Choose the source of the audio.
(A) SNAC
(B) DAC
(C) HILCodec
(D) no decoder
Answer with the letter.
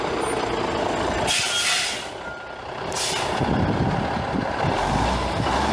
D